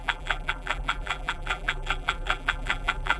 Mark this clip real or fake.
fake